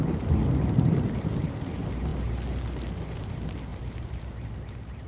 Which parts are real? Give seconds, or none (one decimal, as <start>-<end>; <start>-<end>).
0.0-5.1